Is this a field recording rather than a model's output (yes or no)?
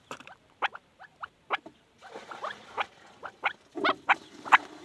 no